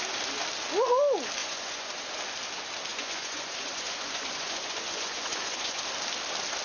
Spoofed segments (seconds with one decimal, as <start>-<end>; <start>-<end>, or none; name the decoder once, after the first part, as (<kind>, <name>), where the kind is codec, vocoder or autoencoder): 1.4-1.9 (vocoder, Vocos); 2.9-5.8